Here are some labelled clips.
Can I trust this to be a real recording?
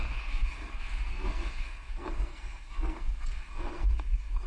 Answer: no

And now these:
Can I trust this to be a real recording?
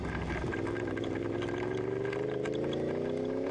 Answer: yes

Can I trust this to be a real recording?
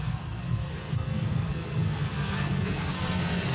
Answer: no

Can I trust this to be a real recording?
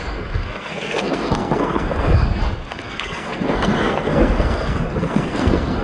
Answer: no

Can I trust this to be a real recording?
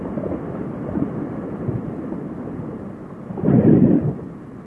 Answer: yes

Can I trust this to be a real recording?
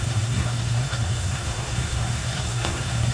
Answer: no